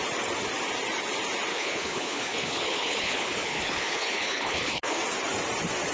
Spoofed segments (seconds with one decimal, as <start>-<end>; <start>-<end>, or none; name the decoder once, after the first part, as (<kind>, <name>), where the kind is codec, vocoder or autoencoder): 1.5-5.0 (codec, HILCodec)